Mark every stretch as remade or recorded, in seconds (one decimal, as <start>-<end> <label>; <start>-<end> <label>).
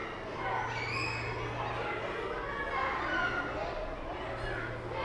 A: 0.0-5.0 recorded